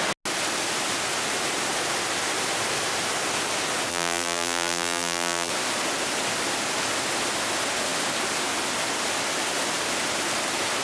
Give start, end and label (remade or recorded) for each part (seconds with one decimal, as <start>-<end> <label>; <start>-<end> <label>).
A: 0.0-3.9 recorded; 3.9-5.5 remade; 5.5-10.8 recorded